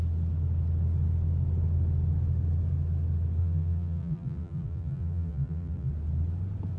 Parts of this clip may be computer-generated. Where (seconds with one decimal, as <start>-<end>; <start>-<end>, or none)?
3.4-5.9

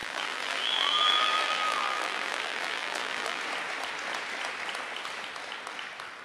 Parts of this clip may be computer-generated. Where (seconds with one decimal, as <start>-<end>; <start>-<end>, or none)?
0.0-3.4

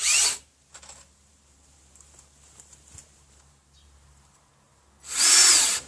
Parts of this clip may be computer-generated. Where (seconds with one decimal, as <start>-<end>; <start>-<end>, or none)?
1.3-4.5; 5.3-5.9

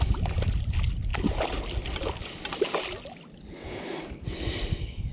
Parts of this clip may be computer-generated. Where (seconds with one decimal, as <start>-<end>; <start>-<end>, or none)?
0.0-1.1; 4.2-5.1